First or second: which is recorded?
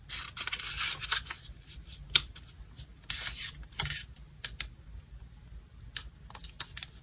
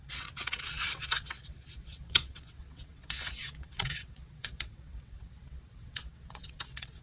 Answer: first